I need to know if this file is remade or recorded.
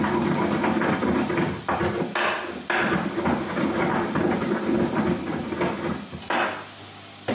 recorded